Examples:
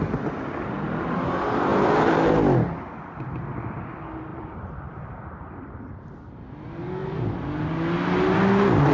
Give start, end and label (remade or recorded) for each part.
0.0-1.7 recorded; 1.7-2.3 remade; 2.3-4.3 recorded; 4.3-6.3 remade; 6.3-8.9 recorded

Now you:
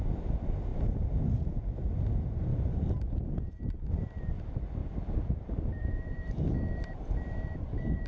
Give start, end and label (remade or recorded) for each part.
0.0-2.5 recorded; 2.5-3.5 remade; 3.5-4.8 recorded; 4.8-8.1 remade

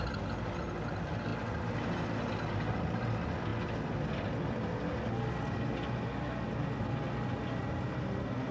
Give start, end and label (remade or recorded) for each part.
0.0-8.5 recorded

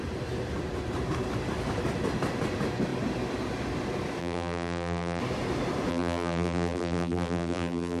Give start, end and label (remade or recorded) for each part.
0.0-4.2 recorded; 4.2-5.2 remade; 5.2-5.9 recorded; 5.9-8.0 remade